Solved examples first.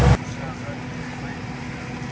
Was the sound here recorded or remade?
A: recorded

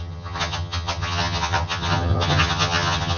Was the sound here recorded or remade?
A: remade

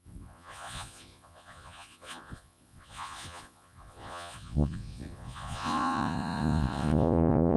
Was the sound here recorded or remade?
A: remade